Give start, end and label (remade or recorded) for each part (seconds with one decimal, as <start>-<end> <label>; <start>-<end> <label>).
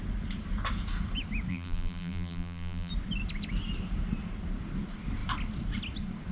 0.0-1.5 recorded; 1.5-2.9 remade; 2.9-6.3 recorded